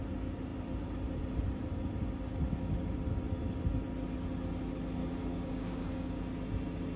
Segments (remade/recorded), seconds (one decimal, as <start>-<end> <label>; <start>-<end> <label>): 0.0-5.0 recorded; 5.0-6.2 remade; 6.2-7.0 recorded